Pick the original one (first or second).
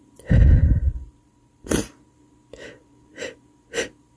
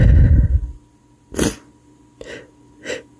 second